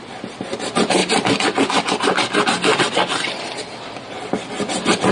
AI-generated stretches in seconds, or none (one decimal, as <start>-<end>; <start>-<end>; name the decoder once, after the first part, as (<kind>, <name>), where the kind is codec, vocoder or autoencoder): none